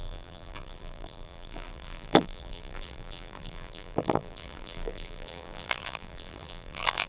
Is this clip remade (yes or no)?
yes